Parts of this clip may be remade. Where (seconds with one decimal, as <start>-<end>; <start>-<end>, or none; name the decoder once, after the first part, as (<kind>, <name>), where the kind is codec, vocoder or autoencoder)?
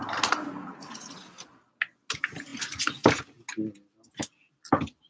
none